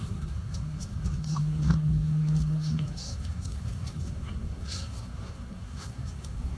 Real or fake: fake